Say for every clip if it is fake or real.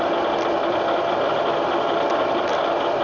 real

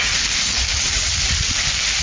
real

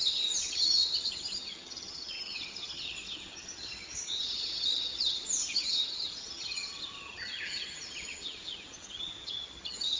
fake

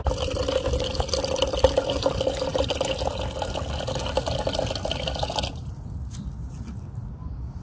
real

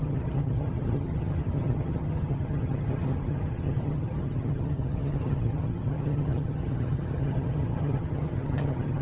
fake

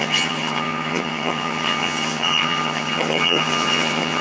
fake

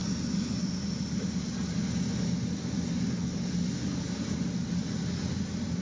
real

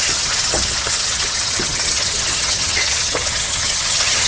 fake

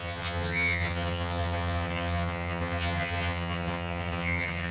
fake